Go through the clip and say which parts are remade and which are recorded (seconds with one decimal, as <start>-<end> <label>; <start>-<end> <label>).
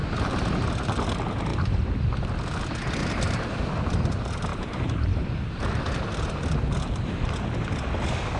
0.0-0.7 remade; 0.7-3.0 recorded; 3.0-3.7 remade; 3.7-4.5 recorded; 4.5-5.6 remade; 5.6-8.4 recorded